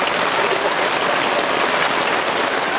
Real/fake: real